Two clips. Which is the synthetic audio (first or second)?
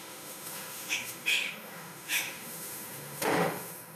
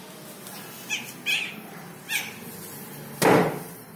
first